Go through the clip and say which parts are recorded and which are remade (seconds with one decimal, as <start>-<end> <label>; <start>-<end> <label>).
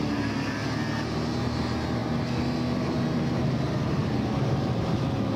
0.0-5.4 recorded